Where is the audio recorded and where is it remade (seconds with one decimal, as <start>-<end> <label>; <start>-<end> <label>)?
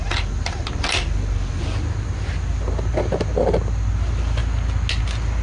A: 0.0-5.4 recorded